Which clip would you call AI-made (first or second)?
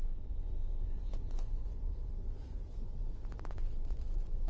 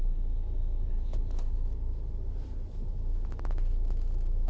first